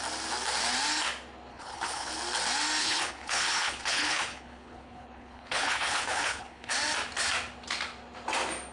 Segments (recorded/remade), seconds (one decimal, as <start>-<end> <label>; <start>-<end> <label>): 0.0-1.5 recorded; 1.5-2.1 remade; 2.1-2.8 recorded; 2.8-6.7 remade; 6.7-8.7 recorded